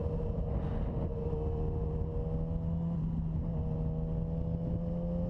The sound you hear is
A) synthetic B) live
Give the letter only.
B